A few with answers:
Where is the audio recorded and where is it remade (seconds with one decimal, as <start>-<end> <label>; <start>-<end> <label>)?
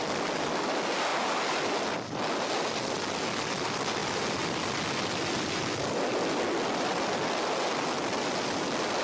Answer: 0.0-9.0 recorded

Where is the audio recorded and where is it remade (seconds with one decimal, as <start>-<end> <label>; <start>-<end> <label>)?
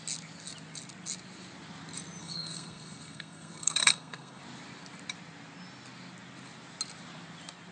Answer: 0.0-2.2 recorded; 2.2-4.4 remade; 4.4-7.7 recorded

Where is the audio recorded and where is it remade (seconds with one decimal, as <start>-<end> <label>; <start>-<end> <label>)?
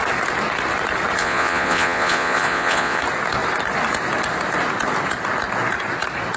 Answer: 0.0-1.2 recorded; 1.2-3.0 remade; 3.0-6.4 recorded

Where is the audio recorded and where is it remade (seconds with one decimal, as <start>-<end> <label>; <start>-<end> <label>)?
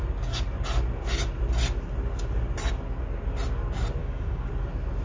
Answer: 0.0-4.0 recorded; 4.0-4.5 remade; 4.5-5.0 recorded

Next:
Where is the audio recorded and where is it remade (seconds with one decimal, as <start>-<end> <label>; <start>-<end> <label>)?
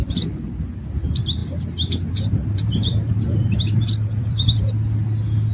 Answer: 0.0-1.4 recorded; 1.4-4.6 remade; 4.6-5.5 recorded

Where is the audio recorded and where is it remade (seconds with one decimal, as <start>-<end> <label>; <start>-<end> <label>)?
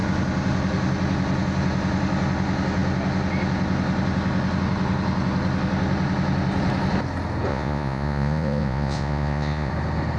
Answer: 0.0-7.5 recorded; 7.5-9.7 remade; 9.7-10.2 recorded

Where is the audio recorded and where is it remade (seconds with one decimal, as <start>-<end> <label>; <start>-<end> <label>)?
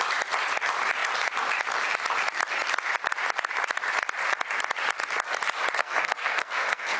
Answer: 0.0-5.8 recorded; 5.8-7.0 remade